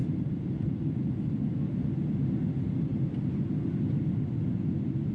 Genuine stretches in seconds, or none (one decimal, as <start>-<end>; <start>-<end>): 0.9-5.1